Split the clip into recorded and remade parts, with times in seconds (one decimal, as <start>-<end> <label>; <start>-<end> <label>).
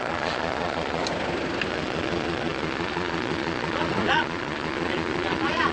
0.0-1.0 remade; 1.0-1.7 recorded; 1.7-5.7 remade